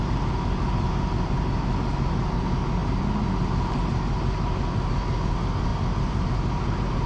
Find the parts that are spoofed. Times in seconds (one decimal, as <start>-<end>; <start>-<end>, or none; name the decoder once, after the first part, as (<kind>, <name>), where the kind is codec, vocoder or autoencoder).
none

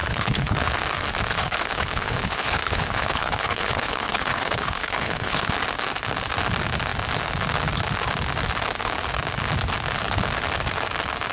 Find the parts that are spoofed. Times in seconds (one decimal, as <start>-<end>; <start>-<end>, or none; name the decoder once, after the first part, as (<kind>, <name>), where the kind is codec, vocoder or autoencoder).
0.0-0.7 (codec, HILCodec); 1.3-5.5

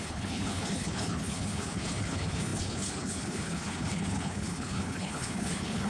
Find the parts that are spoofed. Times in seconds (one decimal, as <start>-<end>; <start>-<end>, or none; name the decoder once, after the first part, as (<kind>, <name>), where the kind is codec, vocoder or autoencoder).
0.0-5.9 (codec, HILCodec)

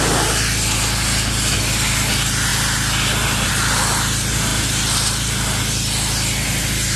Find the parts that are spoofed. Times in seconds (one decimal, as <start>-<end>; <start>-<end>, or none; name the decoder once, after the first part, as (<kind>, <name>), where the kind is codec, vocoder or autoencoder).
none

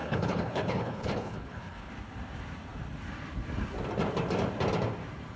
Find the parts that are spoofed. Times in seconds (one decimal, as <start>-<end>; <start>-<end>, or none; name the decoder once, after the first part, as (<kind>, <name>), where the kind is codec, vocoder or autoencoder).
0.0-1.9 (codec, HILCodec)